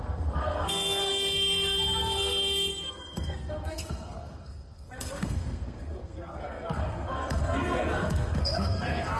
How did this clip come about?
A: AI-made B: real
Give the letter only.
A